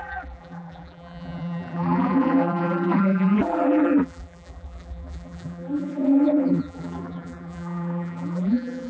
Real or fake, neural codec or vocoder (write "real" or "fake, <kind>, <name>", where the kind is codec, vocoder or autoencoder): fake, vocoder, BigVGAN v2